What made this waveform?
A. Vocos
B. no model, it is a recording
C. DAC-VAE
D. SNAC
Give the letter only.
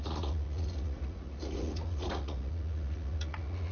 A